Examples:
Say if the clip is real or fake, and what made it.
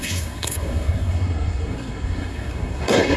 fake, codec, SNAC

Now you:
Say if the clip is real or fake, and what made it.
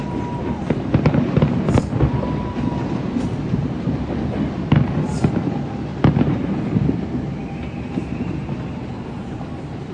real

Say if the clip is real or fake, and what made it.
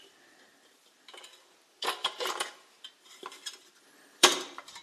fake, vocoder, BigVGAN v2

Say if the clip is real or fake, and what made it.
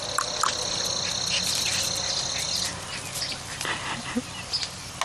real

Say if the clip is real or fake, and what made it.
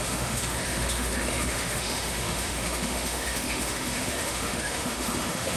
fake, autoencoder, DAC-VAE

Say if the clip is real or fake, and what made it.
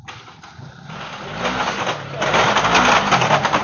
real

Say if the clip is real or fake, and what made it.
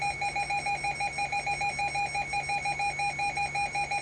real